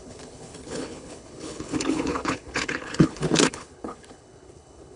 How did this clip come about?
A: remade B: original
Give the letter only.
A